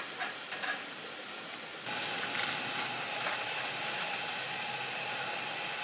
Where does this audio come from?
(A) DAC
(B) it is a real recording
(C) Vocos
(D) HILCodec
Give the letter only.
B